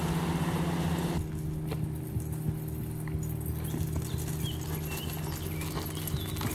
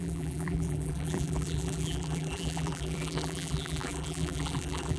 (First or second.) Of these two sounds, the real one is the first